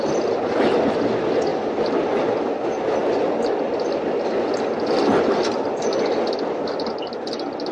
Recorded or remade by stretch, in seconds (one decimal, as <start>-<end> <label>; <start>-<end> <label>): 0.0-7.7 recorded